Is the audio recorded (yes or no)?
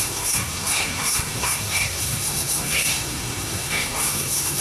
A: no